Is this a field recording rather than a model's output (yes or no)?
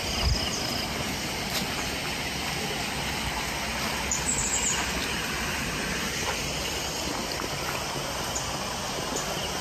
yes